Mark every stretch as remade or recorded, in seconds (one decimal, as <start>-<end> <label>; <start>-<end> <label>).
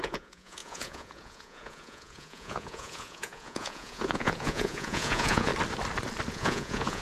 0.0-5.5 remade; 5.5-6.3 recorded; 6.3-7.0 remade